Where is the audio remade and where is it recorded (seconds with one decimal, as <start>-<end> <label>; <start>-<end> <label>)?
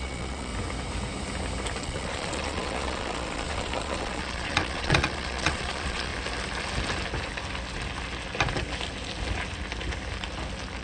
0.0-0.5 remade; 0.5-1.8 recorded; 1.8-6.1 remade; 6.1-10.8 recorded